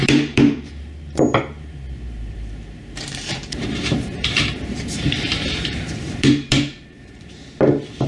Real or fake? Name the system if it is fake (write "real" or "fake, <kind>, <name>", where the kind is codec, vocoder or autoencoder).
fake, vocoder, BigVGAN v2